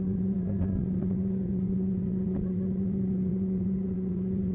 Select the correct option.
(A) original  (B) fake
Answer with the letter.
B